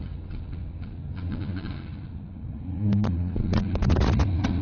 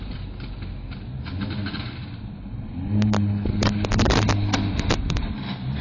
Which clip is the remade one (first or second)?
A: first